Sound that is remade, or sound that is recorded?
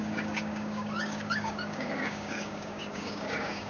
remade